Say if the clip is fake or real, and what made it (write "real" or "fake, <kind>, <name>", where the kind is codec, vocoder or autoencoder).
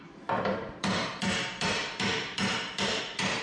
fake, vocoder, BigVGAN v2